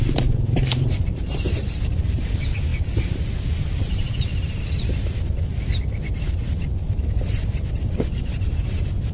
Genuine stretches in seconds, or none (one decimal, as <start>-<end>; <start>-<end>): 4.3-6.1

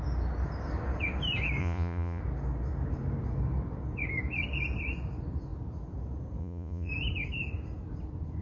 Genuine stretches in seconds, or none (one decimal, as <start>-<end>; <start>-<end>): 0.0-1.6; 2.2-6.4; 6.9-8.4